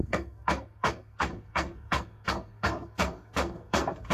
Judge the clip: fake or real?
fake